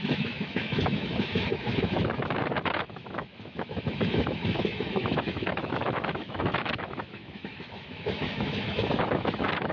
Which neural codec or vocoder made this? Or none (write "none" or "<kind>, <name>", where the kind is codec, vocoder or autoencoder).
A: autoencoder, DAC-VAE